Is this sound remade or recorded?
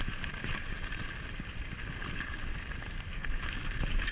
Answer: recorded